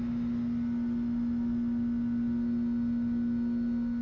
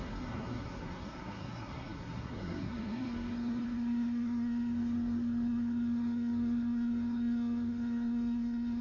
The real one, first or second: first